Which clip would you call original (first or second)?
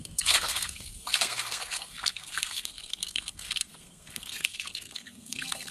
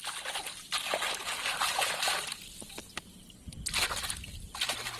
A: second